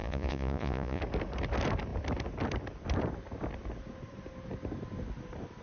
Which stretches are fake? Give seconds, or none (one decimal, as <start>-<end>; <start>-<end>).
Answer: 0.0-1.0